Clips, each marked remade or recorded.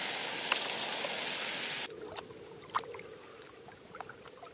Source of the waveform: recorded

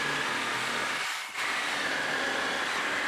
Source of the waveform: recorded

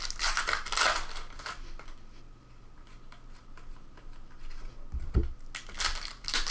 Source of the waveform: recorded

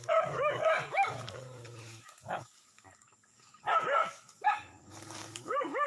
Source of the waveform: remade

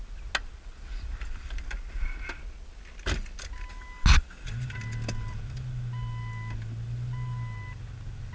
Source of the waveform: recorded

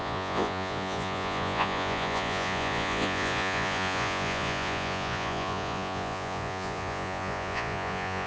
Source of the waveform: remade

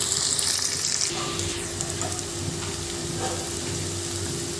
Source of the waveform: recorded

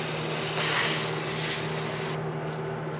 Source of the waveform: recorded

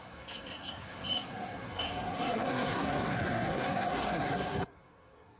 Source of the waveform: remade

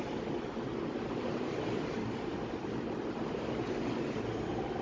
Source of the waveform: recorded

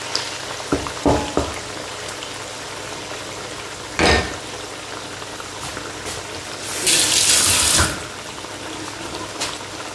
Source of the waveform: recorded